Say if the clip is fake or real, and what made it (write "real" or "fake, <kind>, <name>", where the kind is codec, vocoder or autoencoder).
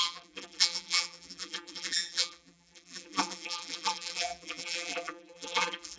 fake, vocoder, BigVGAN v2